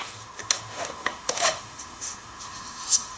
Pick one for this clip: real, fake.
fake